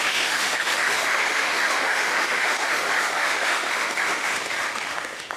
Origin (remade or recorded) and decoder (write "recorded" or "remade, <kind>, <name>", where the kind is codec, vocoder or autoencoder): remade, autoencoder, DAC-VAE